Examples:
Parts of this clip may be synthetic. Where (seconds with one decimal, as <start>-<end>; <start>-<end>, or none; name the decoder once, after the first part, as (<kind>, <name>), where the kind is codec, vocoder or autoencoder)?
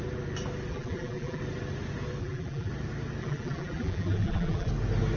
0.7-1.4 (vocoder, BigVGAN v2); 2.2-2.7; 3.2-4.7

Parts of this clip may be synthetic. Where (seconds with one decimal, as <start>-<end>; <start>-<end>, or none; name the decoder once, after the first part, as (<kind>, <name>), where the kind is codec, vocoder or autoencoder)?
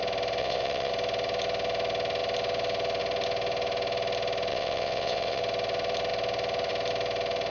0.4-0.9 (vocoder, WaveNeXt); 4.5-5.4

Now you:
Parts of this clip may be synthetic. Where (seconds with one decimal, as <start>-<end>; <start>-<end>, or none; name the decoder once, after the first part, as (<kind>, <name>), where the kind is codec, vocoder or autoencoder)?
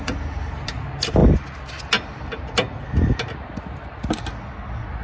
none